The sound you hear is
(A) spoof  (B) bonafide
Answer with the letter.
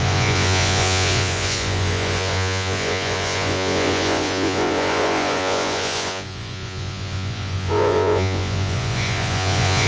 A